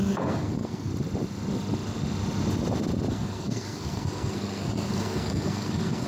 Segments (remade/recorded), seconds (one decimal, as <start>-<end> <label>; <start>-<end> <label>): 0.0-0.9 remade; 0.9-3.1 recorded; 3.1-6.1 remade